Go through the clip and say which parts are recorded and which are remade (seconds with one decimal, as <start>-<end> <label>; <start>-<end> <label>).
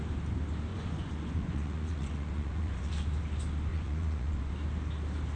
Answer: 0.0-0.7 recorded; 0.7-2.9 remade; 2.9-3.7 recorded; 3.7-4.5 remade; 4.5-5.4 recorded